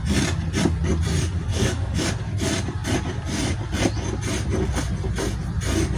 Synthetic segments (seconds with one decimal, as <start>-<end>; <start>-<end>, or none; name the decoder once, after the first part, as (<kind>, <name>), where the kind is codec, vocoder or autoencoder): 1.5-2.1 (codec, DAC)